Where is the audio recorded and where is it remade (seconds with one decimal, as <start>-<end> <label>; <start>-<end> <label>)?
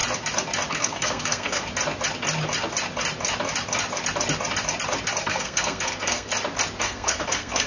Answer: 0.0-0.7 recorded; 0.7-1.6 remade; 1.6-5.2 recorded; 5.2-6.3 remade; 6.3-6.8 recorded; 6.8-7.7 remade